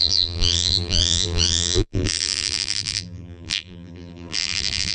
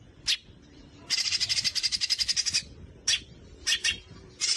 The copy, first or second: first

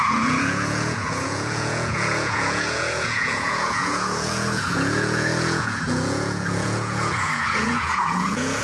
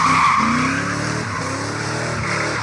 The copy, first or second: first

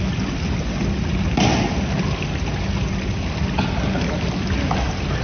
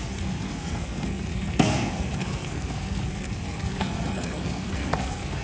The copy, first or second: second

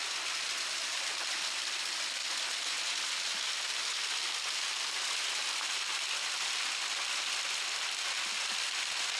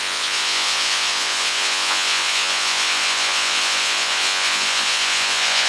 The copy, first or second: second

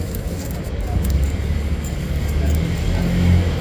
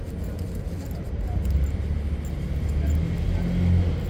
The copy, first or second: first